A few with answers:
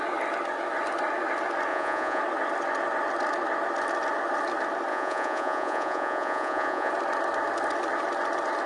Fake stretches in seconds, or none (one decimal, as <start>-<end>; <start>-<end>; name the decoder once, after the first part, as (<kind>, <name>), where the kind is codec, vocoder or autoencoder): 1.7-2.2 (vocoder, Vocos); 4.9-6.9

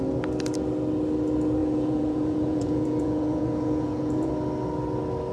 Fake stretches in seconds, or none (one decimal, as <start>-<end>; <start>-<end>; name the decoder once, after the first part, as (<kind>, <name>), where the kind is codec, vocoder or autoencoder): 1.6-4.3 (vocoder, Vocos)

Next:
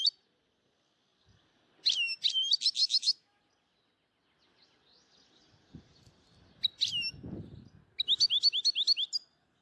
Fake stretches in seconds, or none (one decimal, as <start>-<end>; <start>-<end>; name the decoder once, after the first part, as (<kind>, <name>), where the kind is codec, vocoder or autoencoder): 2.8-3.4 (autoencoder, DAC-VAE)

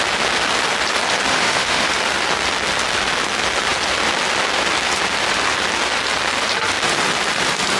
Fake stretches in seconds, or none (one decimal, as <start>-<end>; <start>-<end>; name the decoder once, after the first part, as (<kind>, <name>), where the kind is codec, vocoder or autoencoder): 1.3-1.9 (autoencoder, DAC-VAE)

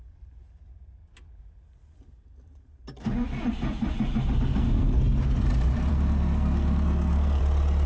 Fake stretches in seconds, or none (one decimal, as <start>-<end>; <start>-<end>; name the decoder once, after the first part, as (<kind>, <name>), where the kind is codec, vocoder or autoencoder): 4.5-5.0 (codec, SNAC); 5.9-7.4

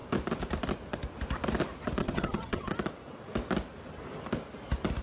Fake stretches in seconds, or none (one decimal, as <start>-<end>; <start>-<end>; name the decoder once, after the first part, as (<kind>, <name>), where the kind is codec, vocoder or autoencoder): 2.0-2.7 (vocoder, HiFi-GAN)

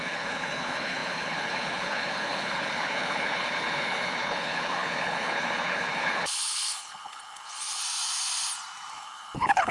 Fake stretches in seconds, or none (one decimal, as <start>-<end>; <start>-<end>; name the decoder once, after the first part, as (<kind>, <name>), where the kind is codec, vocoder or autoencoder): 0.0-7.8 (codec, HILCodec); 8.9-9.7